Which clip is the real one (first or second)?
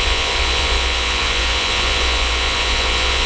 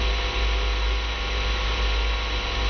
second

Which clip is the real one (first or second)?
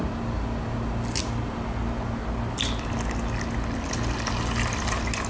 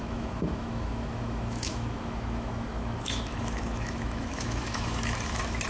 first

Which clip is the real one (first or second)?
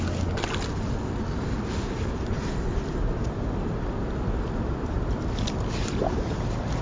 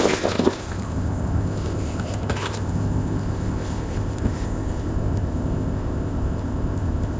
first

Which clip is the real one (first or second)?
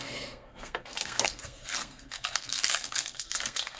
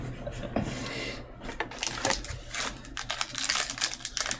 second